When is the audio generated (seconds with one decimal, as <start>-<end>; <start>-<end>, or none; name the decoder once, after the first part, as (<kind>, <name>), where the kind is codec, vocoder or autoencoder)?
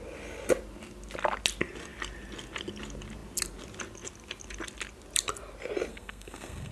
5.9-6.7 (codec, SNAC)